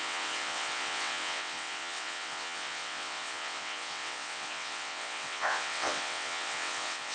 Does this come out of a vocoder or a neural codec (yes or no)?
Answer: yes